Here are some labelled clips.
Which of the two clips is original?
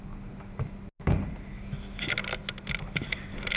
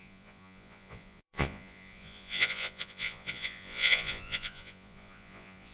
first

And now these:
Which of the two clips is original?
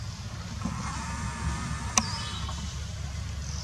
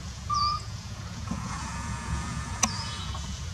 first